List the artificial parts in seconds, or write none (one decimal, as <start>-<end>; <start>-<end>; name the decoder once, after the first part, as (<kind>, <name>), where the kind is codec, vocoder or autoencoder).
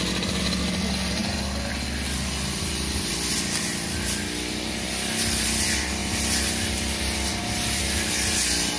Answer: none